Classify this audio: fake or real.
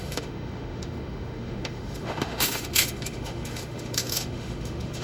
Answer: fake